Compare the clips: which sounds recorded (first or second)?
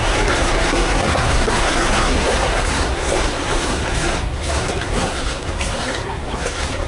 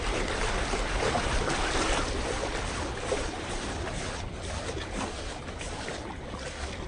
second